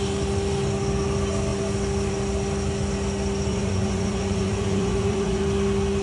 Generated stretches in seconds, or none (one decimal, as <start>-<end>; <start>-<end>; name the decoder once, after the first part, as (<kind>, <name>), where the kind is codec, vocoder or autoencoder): 3.5-5.4 (vocoder, Vocos)